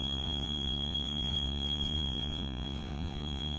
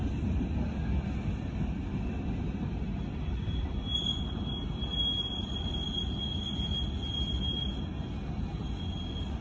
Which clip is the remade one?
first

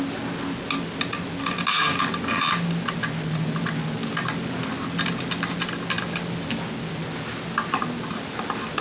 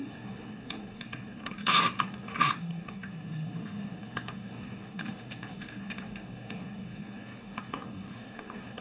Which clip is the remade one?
second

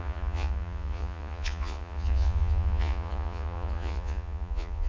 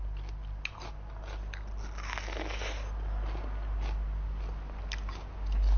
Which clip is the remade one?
first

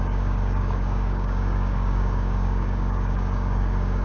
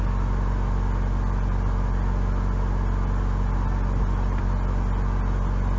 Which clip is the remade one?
first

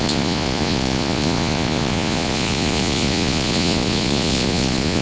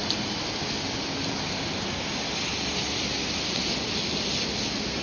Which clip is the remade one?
first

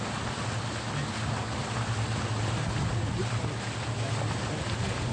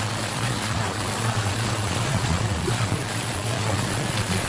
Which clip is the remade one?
second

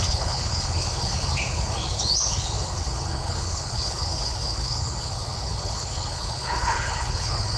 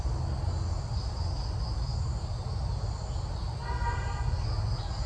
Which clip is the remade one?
first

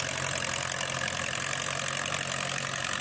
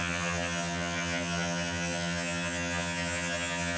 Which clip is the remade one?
second